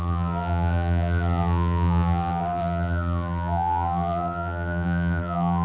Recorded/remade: remade